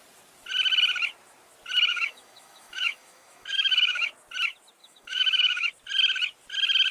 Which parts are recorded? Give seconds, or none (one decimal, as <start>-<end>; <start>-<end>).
0.0-1.9; 4.1-4.8; 5.7-6.9